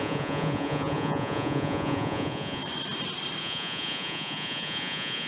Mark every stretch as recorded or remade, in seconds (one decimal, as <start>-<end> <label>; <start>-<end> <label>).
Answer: 0.0-2.6 remade; 2.6-3.4 recorded; 3.4-5.3 remade